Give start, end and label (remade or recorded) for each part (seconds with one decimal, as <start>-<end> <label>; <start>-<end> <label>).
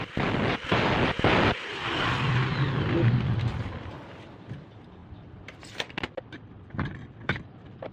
0.0-7.9 recorded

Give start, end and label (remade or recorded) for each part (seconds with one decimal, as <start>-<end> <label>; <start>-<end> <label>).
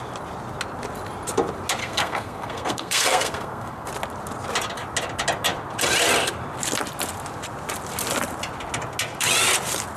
0.0-1.8 recorded; 1.8-3.9 remade; 3.9-10.0 recorded